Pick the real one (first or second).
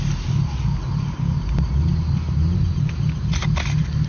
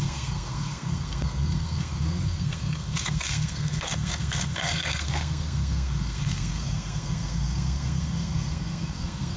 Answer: first